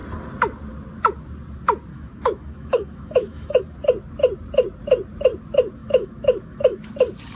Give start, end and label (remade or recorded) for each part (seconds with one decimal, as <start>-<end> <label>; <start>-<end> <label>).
0.0-1.9 recorded; 1.9-3.6 remade; 3.6-5.8 recorded; 5.8-6.9 remade; 6.9-7.4 recorded